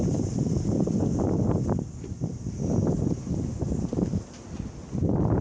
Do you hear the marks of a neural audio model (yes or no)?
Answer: no